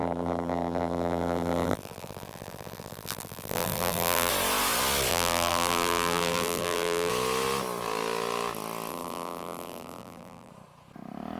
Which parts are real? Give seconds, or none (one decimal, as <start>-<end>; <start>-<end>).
4.3-5.1; 7.1-8.9; 10.5-11.4